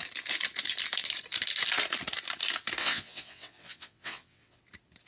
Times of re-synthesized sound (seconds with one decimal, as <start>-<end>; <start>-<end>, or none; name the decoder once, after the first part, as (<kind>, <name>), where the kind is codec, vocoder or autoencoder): 2.8-4.6 (vocoder, WaveNeXt)